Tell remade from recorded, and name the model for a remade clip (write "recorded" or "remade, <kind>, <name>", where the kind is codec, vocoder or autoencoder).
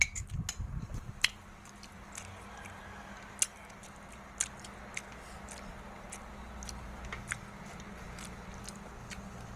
recorded